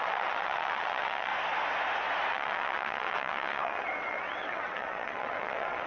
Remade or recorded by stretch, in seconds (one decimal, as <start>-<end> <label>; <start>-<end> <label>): 0.0-1.3 remade; 1.3-2.3 recorded; 2.3-5.9 remade